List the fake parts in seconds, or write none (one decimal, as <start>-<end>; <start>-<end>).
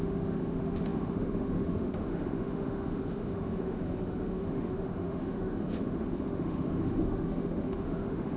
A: 0.0-8.4